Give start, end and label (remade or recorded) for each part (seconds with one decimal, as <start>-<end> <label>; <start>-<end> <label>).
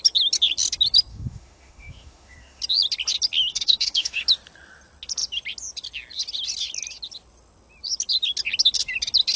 0.0-1.1 recorded; 1.1-2.6 remade; 2.6-3.5 recorded; 3.5-4.2 remade; 4.2-9.4 recorded